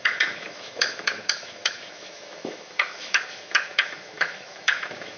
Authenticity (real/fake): fake